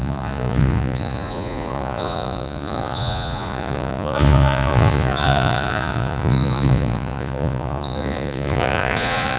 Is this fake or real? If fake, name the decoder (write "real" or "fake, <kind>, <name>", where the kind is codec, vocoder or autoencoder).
fake, vocoder, Vocos